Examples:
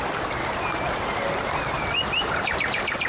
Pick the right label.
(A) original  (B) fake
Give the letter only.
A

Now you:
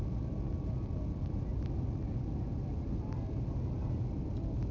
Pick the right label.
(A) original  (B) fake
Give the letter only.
A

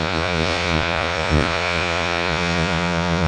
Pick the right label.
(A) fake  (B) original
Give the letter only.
A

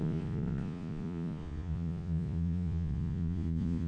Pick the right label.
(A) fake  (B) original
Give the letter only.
A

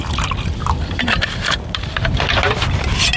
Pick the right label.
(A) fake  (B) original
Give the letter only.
B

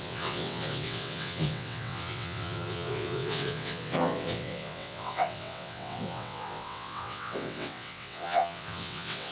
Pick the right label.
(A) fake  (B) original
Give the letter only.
A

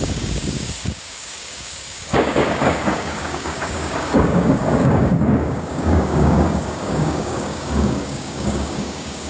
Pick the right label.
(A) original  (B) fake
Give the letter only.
B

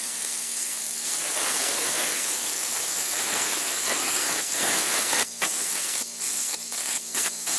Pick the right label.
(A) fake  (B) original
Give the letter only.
A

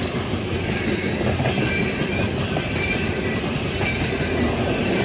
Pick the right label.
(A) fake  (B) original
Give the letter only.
B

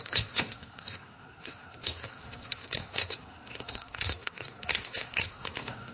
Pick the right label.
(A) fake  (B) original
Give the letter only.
A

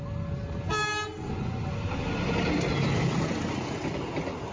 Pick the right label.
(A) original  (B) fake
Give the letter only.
A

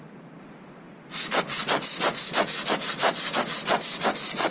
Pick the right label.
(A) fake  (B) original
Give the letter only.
B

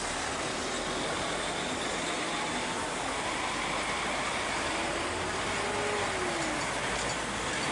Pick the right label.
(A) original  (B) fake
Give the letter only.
A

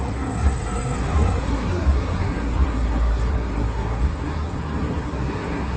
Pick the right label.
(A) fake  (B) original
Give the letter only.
A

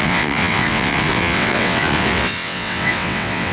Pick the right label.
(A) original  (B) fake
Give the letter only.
B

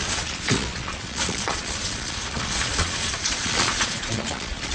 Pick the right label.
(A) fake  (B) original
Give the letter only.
A